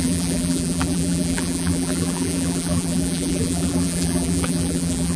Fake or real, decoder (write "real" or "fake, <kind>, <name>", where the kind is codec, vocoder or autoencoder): fake, vocoder, BigVGAN v2